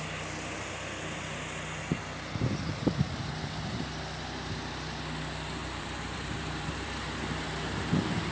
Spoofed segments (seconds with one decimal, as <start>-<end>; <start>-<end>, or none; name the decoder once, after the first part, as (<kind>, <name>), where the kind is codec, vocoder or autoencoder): 5.6-7.9 (vocoder, BigVGAN v2)

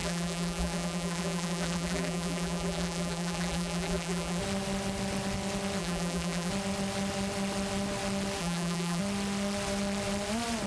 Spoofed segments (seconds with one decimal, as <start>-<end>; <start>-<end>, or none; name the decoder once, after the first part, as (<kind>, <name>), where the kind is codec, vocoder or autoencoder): 0.0-4.4 (vocoder, BigVGAN v2); 5.8-6.5; 8.4-9.0

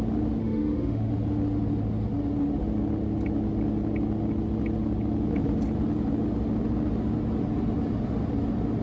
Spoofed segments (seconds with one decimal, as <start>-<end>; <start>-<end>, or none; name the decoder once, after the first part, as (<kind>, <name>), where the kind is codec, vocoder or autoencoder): 0.4-1.1 (autoencoder, DAC-VAE)

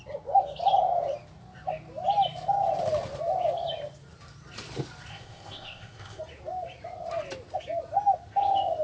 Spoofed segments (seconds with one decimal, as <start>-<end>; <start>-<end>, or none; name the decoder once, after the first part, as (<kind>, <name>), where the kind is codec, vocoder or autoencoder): 5.1-6.2 (codec, ZipCodec)

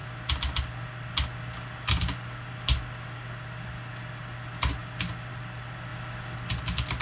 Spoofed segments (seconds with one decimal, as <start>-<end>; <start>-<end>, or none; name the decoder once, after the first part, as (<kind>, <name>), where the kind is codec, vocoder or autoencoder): none

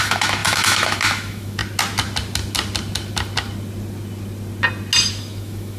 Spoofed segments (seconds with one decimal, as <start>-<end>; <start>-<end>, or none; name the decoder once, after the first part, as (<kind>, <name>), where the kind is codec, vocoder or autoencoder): 0.0-1.6 (autoencoder, DAC-VAE); 5.1-5.8